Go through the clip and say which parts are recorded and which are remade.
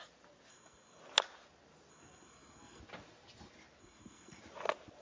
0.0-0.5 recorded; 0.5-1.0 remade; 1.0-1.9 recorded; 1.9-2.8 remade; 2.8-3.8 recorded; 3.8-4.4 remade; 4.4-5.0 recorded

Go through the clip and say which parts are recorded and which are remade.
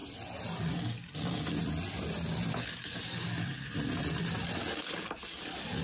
0.0-5.8 recorded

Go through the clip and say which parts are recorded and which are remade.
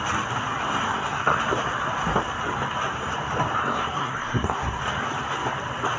0.0-0.8 recorded; 0.8-1.4 remade; 1.4-3.6 recorded; 3.6-4.8 remade; 4.8-6.0 recorded